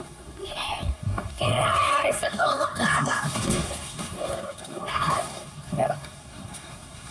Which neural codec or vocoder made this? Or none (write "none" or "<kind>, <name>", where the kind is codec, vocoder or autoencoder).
codec, SNAC